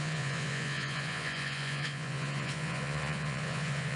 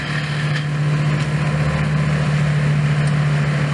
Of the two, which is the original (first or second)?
second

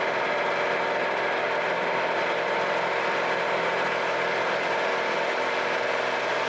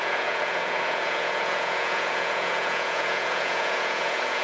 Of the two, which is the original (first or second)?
first